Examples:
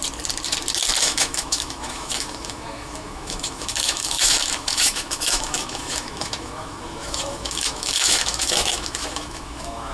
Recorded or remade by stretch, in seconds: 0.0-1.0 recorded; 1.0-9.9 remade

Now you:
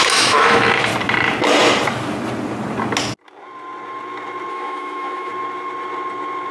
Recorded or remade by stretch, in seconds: 0.0-0.9 remade; 0.9-4.5 recorded; 4.5-5.3 remade; 5.3-6.5 recorded

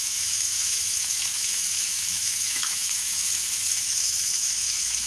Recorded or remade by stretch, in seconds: 0.0-5.1 remade

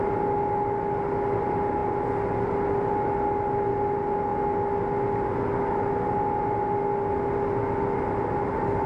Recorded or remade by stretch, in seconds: 0.0-8.9 recorded